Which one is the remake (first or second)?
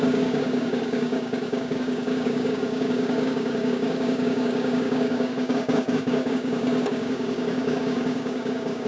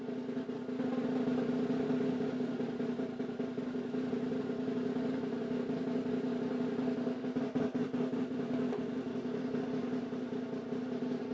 first